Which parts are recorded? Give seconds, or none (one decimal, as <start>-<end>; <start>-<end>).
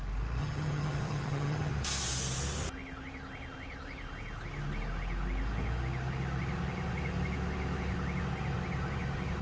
0.0-0.4; 1.7-9.4